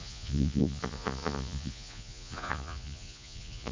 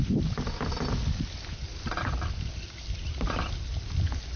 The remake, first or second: first